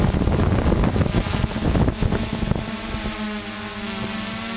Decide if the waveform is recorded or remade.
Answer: recorded